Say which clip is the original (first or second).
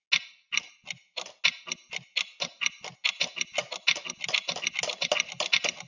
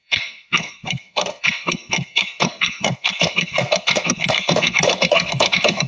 first